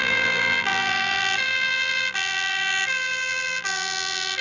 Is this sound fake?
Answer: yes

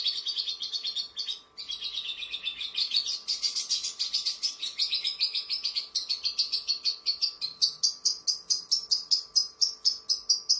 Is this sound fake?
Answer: no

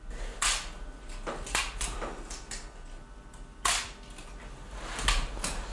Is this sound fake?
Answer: no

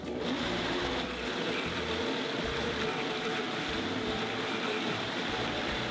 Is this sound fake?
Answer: yes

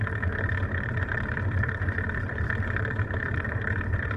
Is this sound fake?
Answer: yes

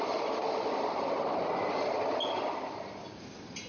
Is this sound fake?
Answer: no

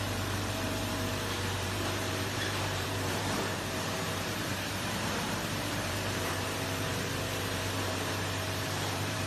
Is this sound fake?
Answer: yes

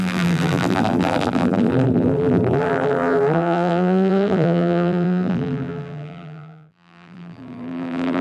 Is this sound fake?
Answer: yes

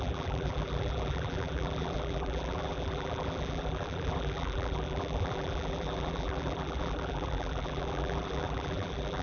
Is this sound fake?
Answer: yes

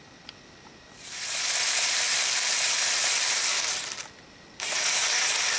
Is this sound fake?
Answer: yes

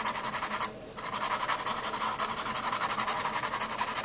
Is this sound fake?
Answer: yes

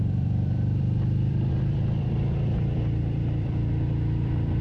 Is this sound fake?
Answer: yes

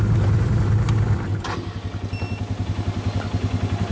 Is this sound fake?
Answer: no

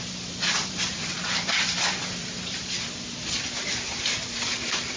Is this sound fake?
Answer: yes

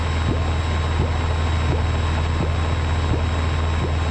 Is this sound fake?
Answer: no